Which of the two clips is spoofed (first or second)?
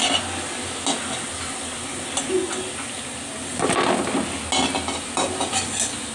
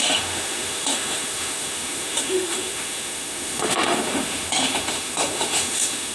second